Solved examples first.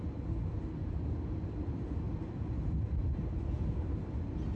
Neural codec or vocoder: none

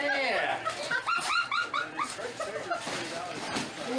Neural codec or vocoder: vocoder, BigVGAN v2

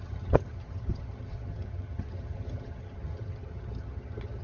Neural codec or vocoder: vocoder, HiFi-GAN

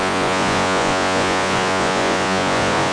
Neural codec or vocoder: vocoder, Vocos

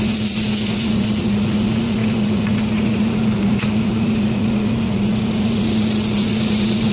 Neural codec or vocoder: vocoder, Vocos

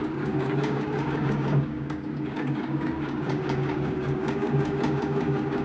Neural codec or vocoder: codec, DAC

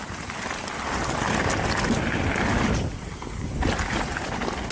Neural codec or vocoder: none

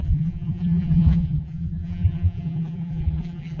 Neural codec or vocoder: vocoder, BigVGAN v2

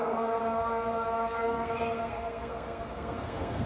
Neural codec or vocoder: codec, SNAC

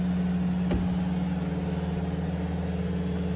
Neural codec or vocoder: none